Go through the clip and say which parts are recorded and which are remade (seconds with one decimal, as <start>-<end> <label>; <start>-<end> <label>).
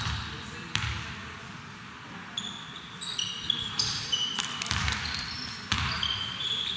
0.0-3.1 recorded; 3.1-5.8 remade; 5.8-6.8 recorded